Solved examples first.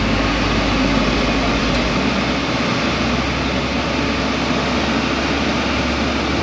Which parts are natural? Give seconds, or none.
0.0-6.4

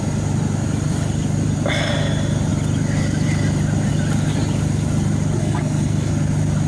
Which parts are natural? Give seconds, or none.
0.0-5.4; 6.1-6.7

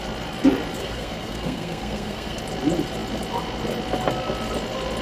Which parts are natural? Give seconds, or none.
0.0-0.8; 2.4-5.0

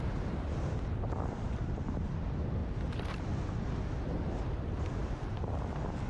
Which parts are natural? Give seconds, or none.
0.0-6.1

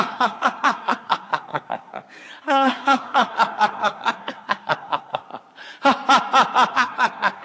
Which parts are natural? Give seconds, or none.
1.9-2.4; 5.2-6.7

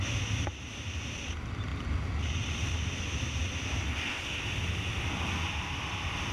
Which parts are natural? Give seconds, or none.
0.0-6.3

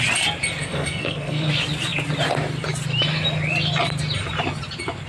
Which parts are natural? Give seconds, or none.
0.0-0.6; 1.5-5.1

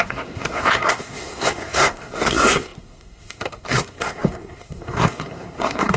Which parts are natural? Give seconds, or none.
none